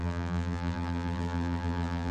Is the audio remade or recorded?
remade